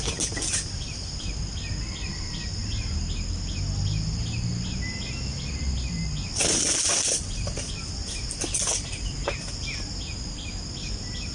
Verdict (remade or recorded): recorded